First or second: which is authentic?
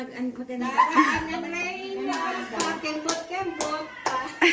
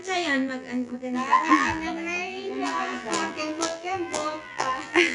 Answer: first